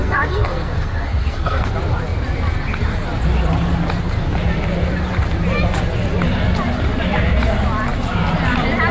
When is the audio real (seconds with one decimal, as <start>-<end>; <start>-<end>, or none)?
1.7-8.9